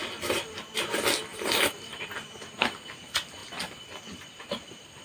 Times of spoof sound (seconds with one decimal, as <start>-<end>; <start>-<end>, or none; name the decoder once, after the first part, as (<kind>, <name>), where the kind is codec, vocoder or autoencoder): 0.6-1.3 (vocoder, BigVGAN v2); 2.6-3.4; 4.4-5.0